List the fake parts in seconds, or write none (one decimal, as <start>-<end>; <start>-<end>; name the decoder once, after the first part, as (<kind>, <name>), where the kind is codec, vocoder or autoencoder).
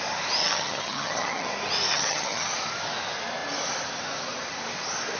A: 0.4-1.5 (vocoder, HiFi-GAN); 1.9-2.5